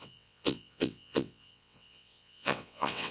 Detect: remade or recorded remade